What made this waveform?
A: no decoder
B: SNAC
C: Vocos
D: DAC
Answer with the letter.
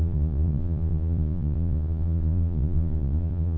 C